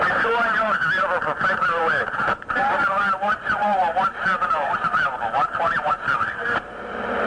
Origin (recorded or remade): remade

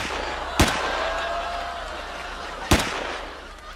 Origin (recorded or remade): recorded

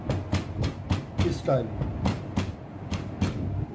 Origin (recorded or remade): recorded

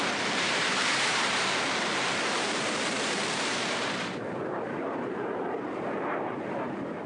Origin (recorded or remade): remade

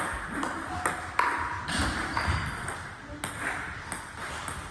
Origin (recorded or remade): recorded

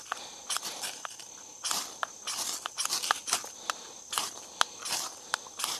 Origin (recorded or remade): recorded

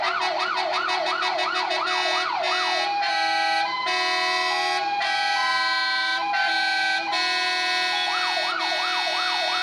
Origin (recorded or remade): recorded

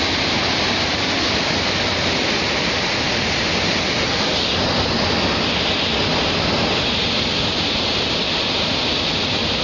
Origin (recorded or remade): recorded